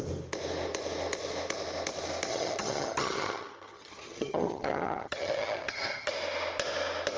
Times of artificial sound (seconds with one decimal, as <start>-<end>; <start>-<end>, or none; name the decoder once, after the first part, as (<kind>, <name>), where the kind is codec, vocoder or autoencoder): 2.3-6.1 (vocoder, HiFi-GAN)